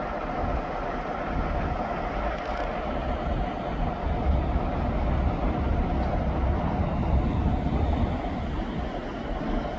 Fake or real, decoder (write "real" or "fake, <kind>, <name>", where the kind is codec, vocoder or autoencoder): real